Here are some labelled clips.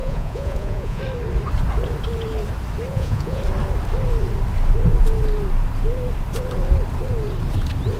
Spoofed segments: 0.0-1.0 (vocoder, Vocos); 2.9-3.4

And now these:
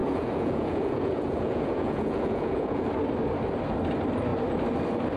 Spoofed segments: 0.0-2.8 (vocoder, Vocos)

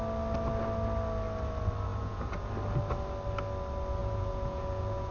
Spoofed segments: 1.9-2.5 (vocoder, Vocos); 4.0-5.1

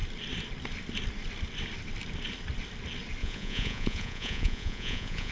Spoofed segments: 3.2-5.3 (vocoder, Vocos)

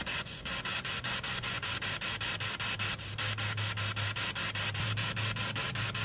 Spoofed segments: 0.0-1.8 (vocoder, Vocos)